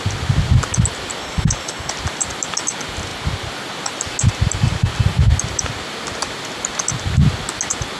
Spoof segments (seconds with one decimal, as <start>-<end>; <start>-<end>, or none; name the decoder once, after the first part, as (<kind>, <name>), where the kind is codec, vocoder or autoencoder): 1.2-1.9 (codec, HILCodec)